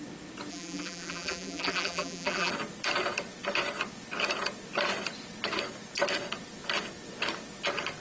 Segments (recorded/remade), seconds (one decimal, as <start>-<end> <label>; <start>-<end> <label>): 0.0-0.5 recorded; 0.5-2.5 remade; 2.5-8.0 recorded